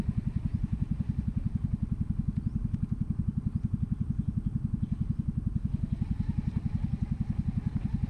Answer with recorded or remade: recorded